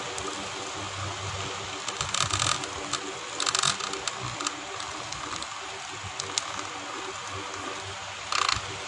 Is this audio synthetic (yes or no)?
no